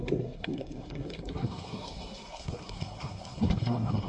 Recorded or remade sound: remade